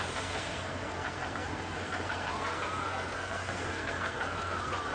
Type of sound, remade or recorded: remade